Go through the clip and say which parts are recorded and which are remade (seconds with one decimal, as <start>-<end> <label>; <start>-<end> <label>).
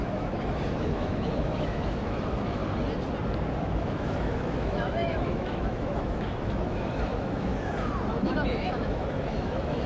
0.0-2.6 remade; 2.6-3.6 recorded; 3.6-7.5 remade; 7.5-8.1 recorded; 8.1-9.9 remade